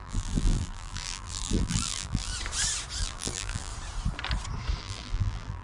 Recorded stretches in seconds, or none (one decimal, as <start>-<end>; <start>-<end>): 2.3-3.0; 3.7-4.8